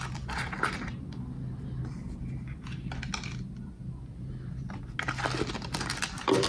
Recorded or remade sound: recorded